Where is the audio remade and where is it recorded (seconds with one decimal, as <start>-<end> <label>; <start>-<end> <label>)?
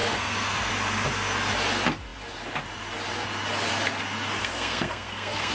0.0-0.7 remade; 0.7-4.4 recorded; 4.4-5.5 remade